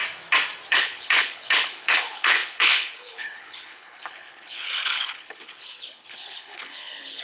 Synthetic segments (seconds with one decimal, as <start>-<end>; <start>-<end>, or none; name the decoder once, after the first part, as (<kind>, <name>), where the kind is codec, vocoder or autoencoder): 0.7-7.2 (codec, HILCodec)